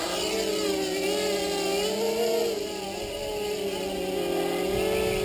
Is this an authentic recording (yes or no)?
yes